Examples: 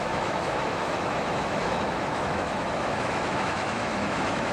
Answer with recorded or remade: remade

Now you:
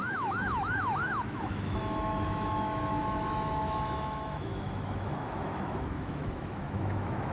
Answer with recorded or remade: remade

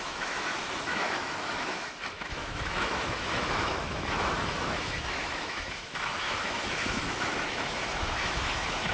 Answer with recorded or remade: remade